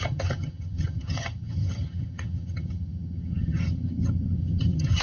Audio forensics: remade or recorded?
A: remade